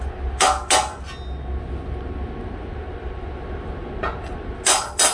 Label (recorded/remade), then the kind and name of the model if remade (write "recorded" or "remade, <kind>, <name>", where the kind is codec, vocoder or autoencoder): recorded